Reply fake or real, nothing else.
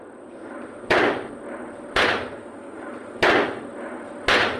real